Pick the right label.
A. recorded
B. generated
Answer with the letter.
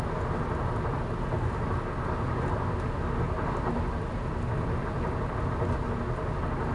A